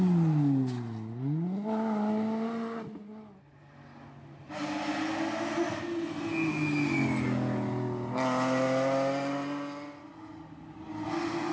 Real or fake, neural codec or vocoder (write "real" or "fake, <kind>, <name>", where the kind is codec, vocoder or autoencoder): real